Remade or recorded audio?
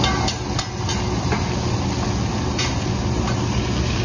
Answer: recorded